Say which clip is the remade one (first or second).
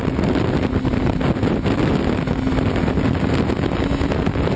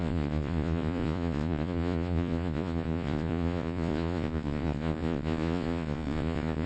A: second